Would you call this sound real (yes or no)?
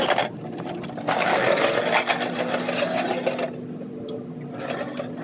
yes